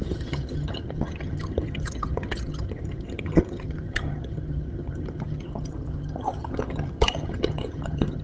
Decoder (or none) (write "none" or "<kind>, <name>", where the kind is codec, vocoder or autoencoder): vocoder, HiFi-GAN